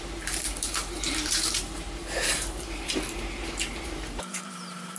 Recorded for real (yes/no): no